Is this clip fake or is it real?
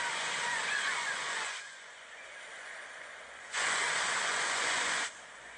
fake